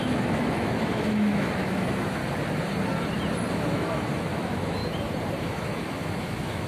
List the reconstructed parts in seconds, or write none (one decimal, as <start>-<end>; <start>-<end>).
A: 0.0-2.2; 3.5-4.8; 5.4-6.7